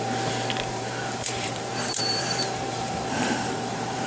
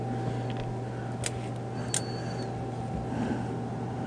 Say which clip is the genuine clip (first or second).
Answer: second